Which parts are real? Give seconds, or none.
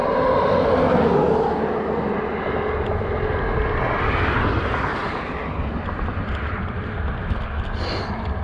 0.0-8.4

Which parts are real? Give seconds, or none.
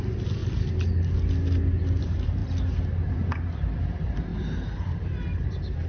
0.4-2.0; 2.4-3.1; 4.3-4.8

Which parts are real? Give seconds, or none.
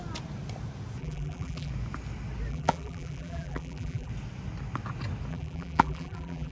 0.0-1.0; 1.7-2.5; 4.1-5.3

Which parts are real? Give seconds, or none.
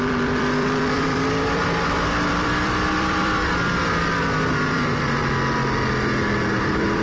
5.2-6.6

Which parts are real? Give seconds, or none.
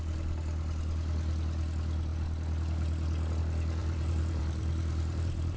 0.0-3.8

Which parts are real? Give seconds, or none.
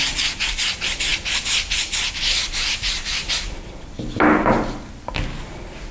0.0-5.9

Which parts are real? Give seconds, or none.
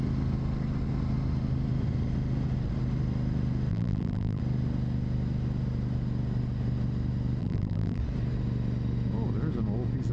0.0-3.7; 4.4-7.4; 8.0-10.1